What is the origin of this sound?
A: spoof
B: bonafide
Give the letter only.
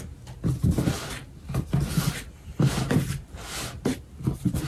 B